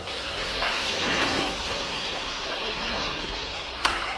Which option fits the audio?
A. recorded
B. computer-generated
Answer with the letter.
B